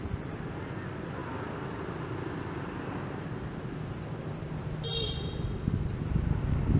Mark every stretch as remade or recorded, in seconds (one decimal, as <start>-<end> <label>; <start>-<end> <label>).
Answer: 0.0-6.8 recorded